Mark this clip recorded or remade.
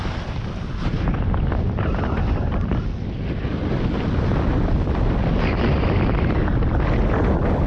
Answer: recorded